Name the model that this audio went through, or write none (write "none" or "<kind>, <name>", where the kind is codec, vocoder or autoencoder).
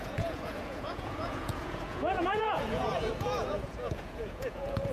vocoder, Vocos